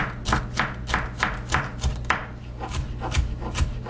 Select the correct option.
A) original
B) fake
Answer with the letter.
A